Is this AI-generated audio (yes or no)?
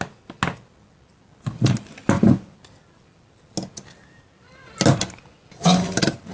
no